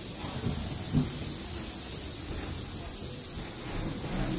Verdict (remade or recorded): recorded